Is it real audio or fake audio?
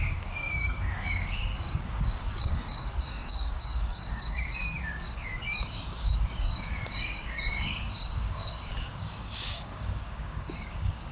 fake